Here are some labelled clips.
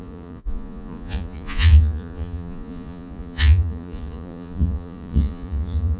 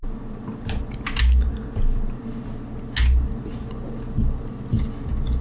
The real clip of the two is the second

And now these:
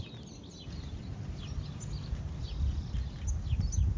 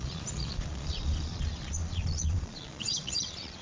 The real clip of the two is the first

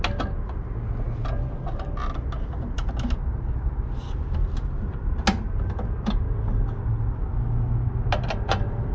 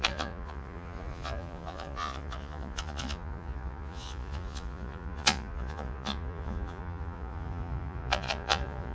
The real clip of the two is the first